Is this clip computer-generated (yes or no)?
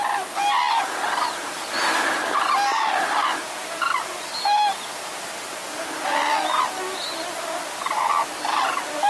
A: no